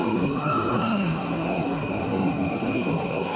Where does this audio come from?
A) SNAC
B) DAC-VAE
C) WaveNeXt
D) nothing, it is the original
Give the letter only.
A